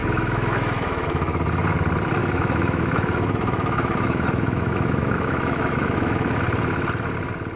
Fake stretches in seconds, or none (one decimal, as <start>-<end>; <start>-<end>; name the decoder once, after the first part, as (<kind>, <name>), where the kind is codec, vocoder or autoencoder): 0.0-1.4 (autoencoder, DAC-VAE); 2.2-6.4